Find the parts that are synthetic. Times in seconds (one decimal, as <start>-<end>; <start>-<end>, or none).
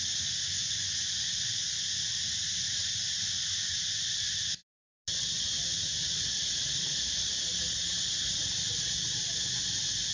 0.5-1.0; 2.8-3.5